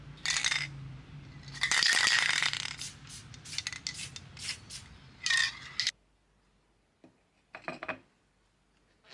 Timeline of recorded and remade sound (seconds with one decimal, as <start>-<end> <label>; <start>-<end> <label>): 0.0-9.1 recorded